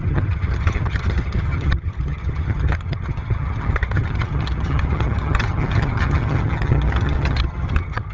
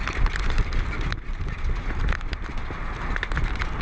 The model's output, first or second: first